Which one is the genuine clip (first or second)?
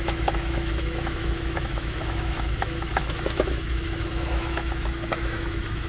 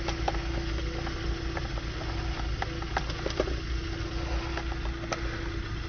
second